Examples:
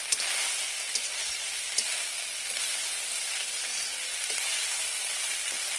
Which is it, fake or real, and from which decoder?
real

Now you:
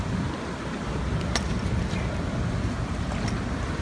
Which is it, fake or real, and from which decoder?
real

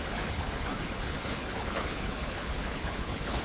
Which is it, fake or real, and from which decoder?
fake, codec, HILCodec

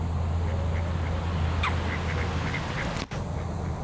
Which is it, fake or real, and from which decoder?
real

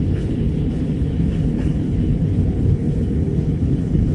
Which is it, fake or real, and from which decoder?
fake, codec, HILCodec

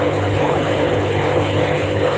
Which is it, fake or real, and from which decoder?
fake, codec, HILCodec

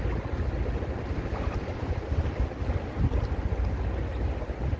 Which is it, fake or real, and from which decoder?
real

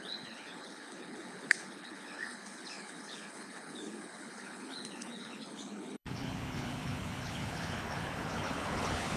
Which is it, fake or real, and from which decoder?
fake, codec, HILCodec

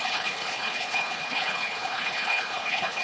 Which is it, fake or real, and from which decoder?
fake, codec, HILCodec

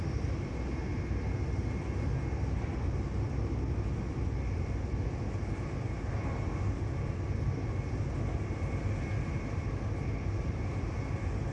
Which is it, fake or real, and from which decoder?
real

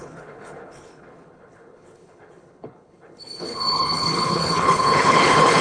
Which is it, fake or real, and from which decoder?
fake, codec, HILCodec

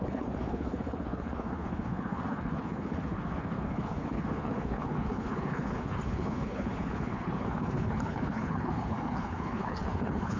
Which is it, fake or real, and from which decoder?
fake, codec, HILCodec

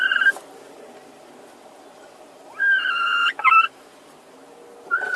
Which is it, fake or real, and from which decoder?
real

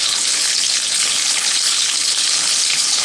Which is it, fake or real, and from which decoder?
fake, codec, HILCodec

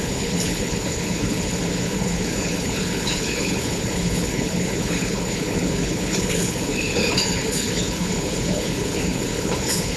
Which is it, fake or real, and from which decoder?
fake, codec, HILCodec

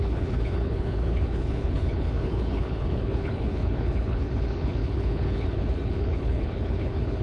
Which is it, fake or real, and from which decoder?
fake, codec, HILCodec